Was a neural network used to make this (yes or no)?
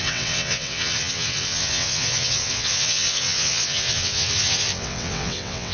yes